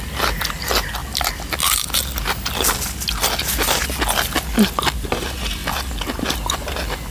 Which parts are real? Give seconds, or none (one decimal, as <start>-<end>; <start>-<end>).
0.0-7.1